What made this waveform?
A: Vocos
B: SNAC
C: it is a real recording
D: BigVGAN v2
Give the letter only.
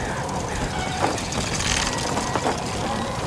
C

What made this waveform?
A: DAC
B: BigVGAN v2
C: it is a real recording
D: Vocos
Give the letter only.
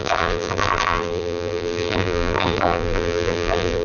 B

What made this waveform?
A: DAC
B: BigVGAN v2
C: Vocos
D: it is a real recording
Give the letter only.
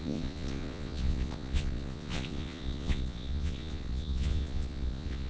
C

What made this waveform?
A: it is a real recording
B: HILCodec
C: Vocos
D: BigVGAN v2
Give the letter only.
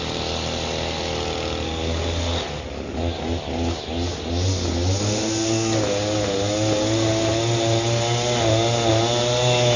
A